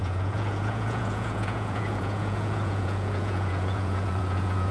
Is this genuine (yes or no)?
no